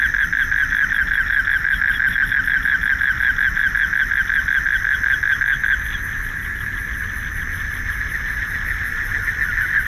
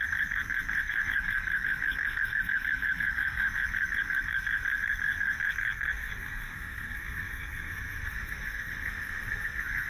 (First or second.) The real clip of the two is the first